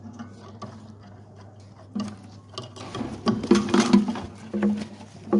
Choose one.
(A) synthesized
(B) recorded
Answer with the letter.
B